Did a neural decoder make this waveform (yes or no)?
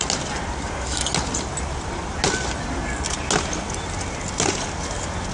no